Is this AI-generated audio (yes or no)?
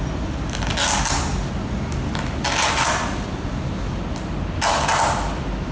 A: no